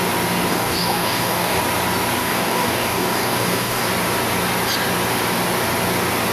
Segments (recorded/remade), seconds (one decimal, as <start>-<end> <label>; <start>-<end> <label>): 0.0-0.5 recorded; 0.5-1.6 remade; 1.6-2.2 recorded; 2.2-3.9 remade; 3.9-6.3 recorded